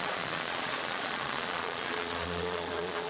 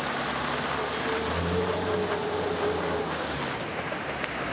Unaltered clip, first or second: second